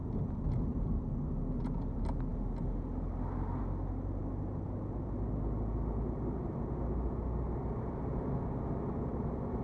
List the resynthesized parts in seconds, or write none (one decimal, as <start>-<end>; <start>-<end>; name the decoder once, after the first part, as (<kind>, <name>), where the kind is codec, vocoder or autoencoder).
none